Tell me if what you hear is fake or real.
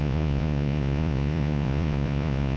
fake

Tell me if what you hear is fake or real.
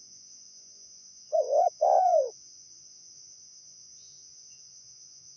fake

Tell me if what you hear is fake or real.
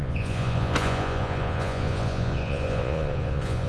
fake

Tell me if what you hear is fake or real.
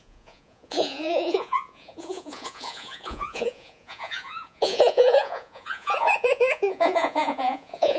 fake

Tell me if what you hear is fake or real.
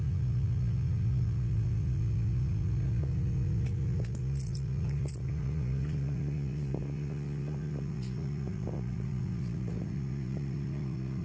fake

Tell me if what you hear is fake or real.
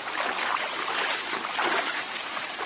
real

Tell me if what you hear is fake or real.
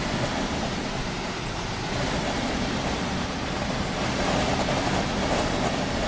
real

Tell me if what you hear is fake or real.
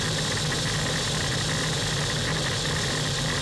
real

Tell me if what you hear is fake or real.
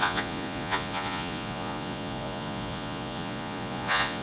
fake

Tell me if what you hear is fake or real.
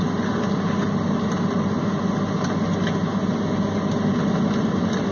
real